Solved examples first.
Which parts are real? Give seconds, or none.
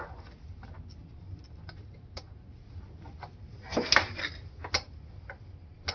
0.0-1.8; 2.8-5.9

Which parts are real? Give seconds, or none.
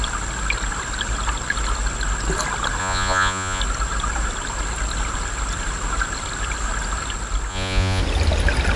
0.0-2.8; 3.6-7.5; 8.0-8.8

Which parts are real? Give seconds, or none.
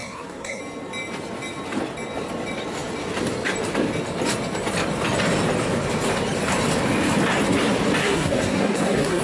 0.6-8.0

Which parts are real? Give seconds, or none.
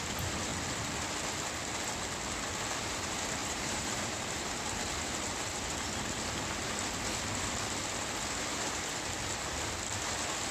0.0-3.4; 4.5-10.5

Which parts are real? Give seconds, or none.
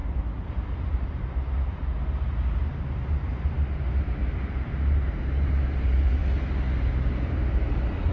0.0-2.8; 6.2-8.1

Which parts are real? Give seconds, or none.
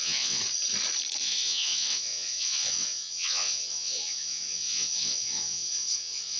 0.4-1.2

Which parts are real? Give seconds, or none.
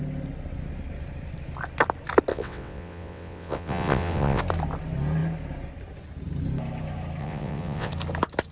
0.0-2.3; 4.4-7.2; 7.9-8.5